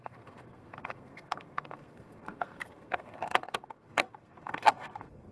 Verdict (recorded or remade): remade